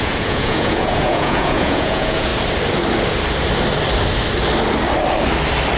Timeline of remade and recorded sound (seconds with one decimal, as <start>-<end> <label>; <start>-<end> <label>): 0.0-2.3 remade; 2.3-5.8 recorded